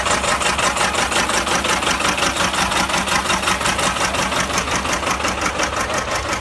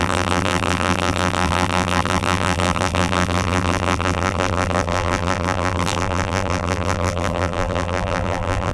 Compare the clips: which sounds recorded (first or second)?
first